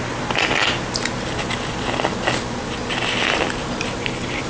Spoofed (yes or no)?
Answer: no